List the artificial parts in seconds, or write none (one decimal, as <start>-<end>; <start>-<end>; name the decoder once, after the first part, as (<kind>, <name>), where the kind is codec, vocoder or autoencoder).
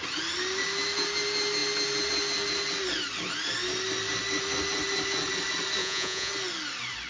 5.8-6.3 (vocoder, Vocos)